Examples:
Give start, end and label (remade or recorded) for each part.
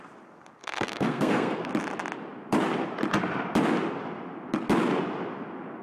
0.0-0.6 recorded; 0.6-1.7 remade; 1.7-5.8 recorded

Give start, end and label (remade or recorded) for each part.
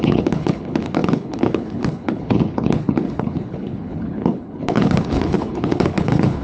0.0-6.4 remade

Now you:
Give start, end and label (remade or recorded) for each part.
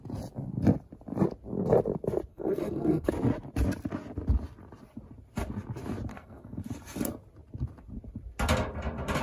0.0-2.3 recorded; 2.3-3.1 remade; 3.1-6.1 recorded; 6.1-6.6 remade; 6.6-9.2 recorded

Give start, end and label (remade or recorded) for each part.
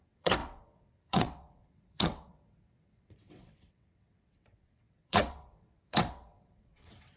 0.0-7.2 remade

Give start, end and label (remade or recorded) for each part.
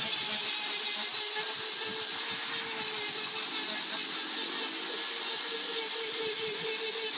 0.0-7.2 recorded